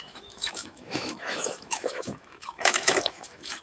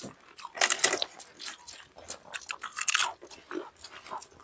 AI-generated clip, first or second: first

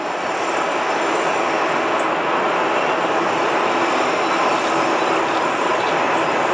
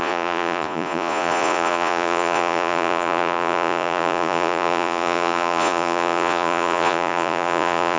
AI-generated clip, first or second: second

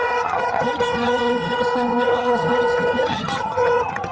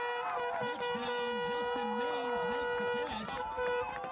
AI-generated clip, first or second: first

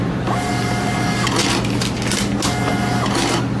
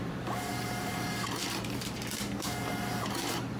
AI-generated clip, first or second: second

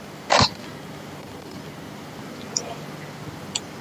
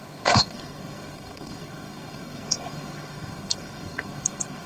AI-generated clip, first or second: second